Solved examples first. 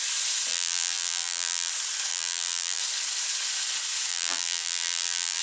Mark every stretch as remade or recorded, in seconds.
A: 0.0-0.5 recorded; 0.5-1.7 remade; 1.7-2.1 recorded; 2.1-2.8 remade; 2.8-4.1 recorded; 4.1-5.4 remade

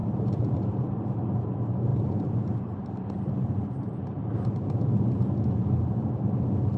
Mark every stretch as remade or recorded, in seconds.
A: 0.0-1.0 remade; 1.0-1.9 recorded; 1.9-5.3 remade; 5.3-6.8 recorded

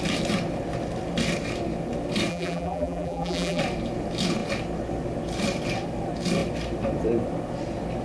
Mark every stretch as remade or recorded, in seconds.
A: 0.0-2.3 recorded; 2.3-3.6 remade; 3.6-8.0 recorded

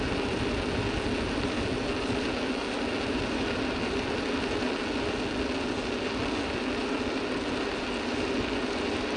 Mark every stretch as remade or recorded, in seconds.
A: 0.0-9.2 recorded

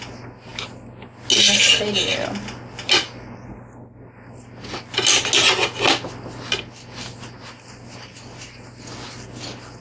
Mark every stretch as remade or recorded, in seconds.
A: 0.0-9.8 recorded